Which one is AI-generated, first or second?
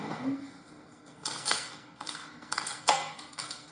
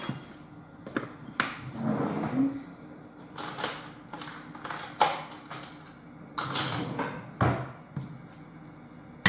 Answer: first